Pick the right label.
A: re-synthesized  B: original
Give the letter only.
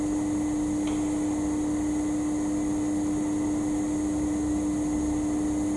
B